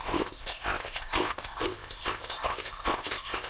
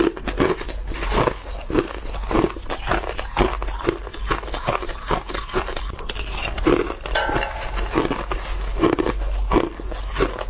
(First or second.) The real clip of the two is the second